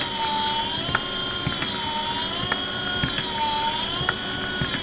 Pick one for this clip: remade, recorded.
recorded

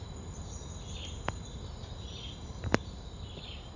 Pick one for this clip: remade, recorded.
recorded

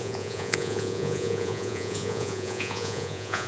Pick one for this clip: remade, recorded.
remade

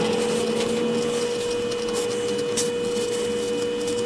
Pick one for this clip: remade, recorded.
recorded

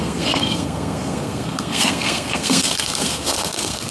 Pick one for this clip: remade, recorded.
remade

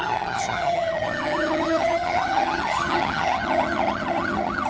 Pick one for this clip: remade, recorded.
remade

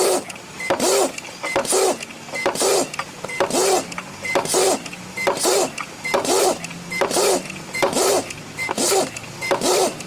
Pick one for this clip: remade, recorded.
recorded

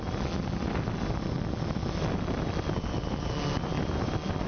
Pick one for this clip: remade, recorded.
recorded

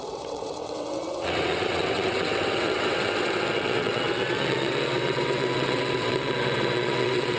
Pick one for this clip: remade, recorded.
remade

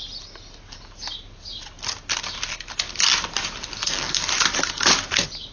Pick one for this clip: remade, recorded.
recorded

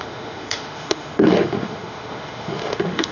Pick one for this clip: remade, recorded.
remade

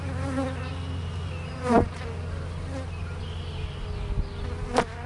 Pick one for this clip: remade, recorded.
recorded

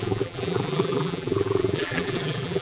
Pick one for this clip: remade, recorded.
remade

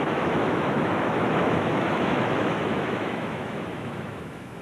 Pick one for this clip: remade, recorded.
remade